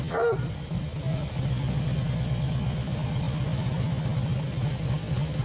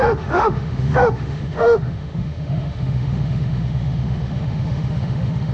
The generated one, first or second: second